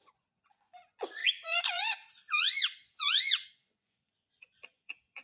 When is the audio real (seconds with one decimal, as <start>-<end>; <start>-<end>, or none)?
none